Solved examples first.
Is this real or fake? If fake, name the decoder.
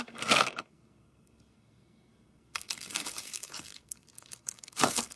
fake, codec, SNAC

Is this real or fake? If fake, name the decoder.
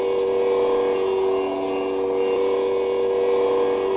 real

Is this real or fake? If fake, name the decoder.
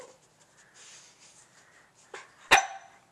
real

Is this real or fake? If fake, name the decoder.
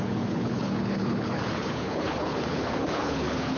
fake, codec, HILCodec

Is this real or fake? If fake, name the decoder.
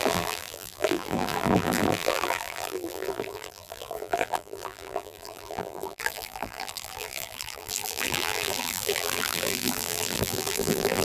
fake, vocoder, BigVGAN v2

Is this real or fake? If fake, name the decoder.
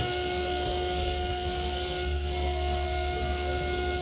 fake, codec, SNAC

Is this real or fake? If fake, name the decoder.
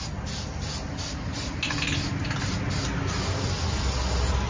real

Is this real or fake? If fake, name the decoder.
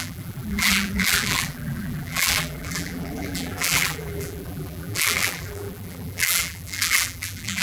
fake, vocoder, BigVGAN v2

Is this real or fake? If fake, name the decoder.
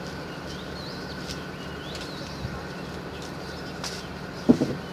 real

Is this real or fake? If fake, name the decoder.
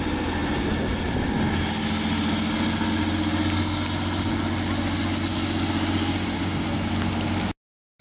real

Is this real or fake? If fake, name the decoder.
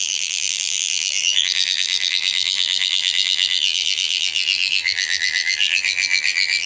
fake, vocoder, BigVGAN v2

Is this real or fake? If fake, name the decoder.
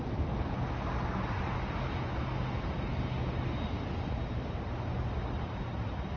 real